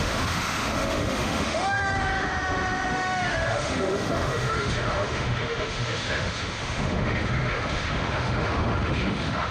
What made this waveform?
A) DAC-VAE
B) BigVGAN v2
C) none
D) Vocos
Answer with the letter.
A